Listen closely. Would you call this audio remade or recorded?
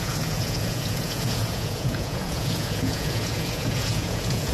remade